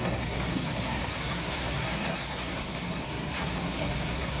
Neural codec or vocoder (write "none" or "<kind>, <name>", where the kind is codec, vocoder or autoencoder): codec, SNAC